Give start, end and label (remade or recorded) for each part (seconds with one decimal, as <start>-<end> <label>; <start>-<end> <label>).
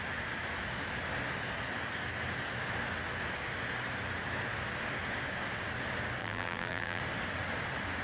0.0-6.2 recorded; 6.2-7.0 remade; 7.0-8.0 recorded